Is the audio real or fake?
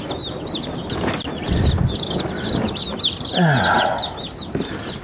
real